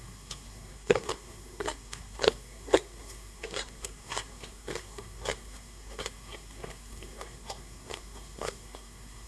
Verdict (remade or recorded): remade